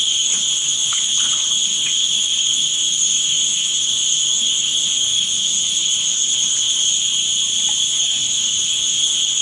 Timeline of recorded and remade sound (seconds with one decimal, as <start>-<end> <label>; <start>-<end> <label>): 0.0-6.8 remade; 6.8-7.9 recorded; 7.9-9.4 remade